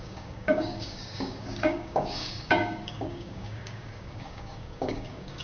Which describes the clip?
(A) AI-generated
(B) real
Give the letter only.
A